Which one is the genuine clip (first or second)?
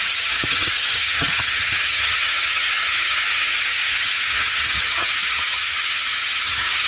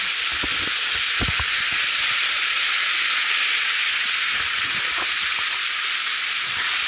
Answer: second